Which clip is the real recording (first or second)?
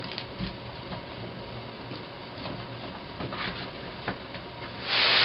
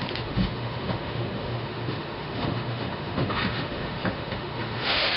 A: first